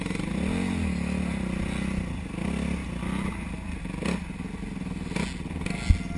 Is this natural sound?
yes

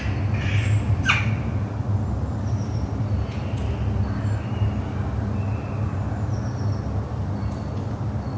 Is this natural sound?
yes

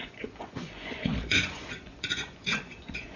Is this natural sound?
no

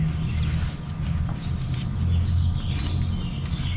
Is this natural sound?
yes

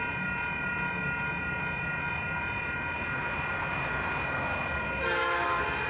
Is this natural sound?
yes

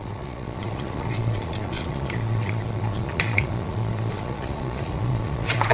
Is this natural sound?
no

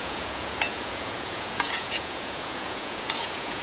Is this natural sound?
no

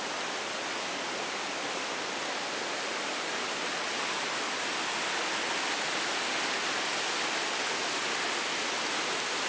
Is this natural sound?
yes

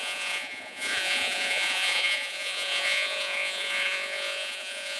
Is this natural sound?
no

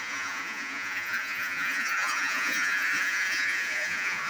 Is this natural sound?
no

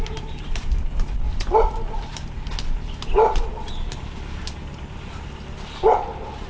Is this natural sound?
yes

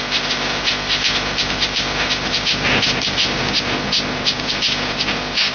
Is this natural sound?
yes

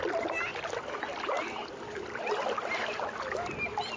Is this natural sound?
yes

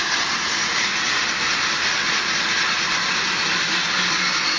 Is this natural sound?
yes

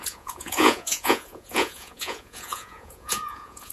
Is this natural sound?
no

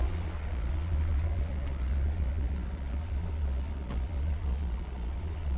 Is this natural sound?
no